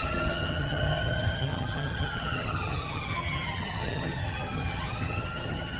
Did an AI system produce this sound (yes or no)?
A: yes